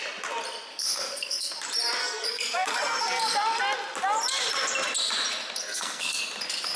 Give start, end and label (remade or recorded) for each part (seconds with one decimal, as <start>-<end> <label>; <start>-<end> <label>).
0.0-0.7 recorded; 0.7-1.5 remade; 1.5-2.0 recorded; 2.0-3.2 remade; 3.2-5.6 recorded; 5.6-6.2 remade; 6.2-6.8 recorded